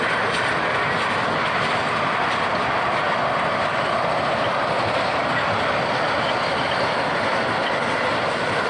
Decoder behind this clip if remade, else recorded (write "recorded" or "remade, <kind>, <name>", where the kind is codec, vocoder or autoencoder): recorded